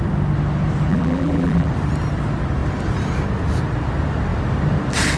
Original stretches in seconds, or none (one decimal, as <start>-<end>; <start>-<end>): 0.0-0.9; 1.7-5.2